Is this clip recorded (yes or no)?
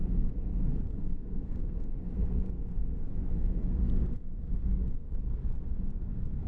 no